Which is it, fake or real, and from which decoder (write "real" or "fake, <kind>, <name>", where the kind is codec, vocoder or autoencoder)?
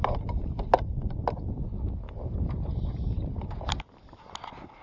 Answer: real